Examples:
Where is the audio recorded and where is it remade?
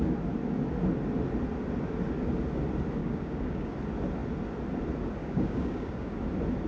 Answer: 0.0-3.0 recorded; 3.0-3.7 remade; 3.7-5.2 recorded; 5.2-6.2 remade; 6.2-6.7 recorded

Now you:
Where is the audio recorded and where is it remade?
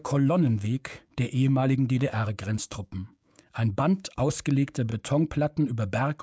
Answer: 0.0-4.9 remade; 4.9-6.2 recorded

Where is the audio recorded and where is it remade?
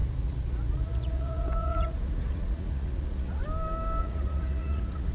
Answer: 0.0-3.4 remade; 3.4-4.0 recorded; 4.0-5.1 remade